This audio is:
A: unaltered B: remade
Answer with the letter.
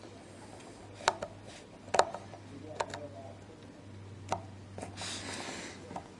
A